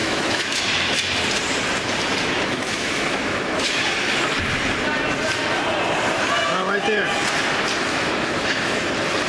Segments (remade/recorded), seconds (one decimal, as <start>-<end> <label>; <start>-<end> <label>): 0.0-0.6 remade; 0.6-2.2 recorded; 2.2-3.8 remade; 3.8-7.9 recorded; 7.9-8.8 remade; 8.8-9.3 recorded